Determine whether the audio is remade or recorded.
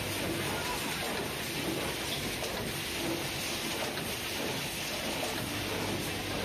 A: recorded